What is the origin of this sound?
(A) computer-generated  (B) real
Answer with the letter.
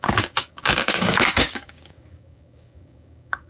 A